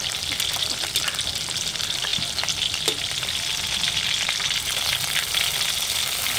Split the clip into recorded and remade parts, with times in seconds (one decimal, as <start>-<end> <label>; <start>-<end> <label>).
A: 0.0-2.1 remade; 2.1-5.7 recorded; 5.7-6.4 remade